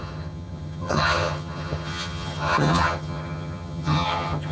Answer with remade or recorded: remade